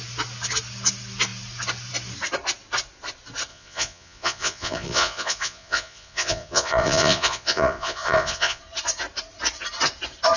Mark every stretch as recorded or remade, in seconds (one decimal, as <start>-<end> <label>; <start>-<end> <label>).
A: 0.0-3.5 recorded; 3.5-8.6 remade; 8.6-10.4 recorded